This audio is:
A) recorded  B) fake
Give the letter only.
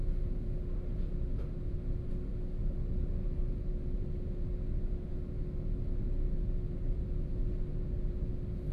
A